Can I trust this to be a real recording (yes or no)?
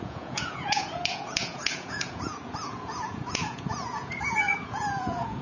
no